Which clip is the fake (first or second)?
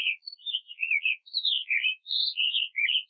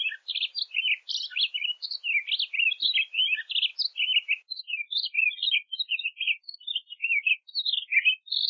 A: first